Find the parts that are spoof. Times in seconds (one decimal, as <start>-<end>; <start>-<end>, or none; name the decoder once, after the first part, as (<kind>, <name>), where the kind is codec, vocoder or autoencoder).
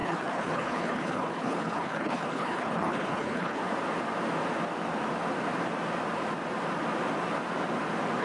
0.0-3.6 (codec, HILCodec)